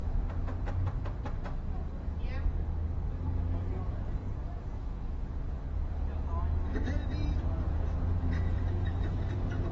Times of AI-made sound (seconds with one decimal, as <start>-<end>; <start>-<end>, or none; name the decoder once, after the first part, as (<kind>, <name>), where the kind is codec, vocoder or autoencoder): 4.2-5.9 (vocoder, Vocos); 7.2-9.7